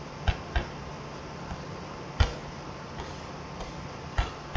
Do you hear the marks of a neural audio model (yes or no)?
no